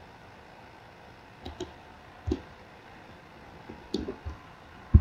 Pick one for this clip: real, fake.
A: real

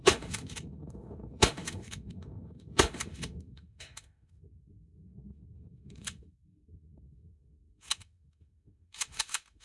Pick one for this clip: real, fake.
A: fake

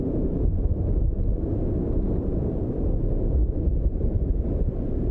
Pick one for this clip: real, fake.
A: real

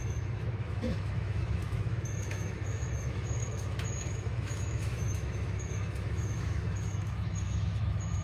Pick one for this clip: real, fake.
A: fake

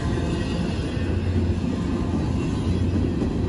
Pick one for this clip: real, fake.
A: real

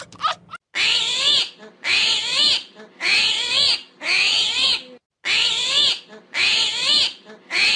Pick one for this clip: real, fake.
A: real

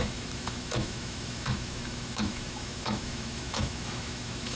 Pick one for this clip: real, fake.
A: fake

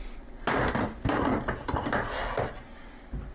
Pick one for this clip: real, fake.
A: real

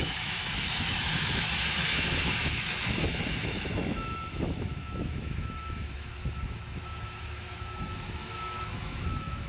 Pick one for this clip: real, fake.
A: fake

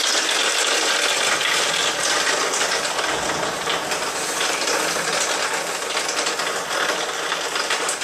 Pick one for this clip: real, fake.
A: real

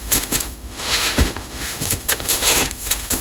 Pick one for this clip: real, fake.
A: fake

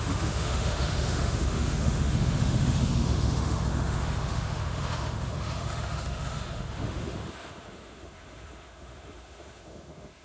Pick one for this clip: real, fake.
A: fake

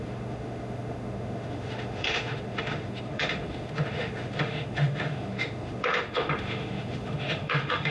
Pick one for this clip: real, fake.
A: fake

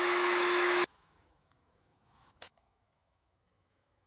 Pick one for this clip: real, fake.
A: fake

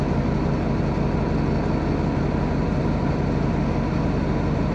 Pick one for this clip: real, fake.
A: real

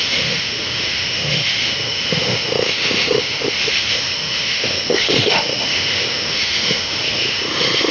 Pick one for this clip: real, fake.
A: fake